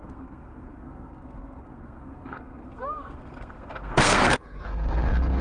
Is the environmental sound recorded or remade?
remade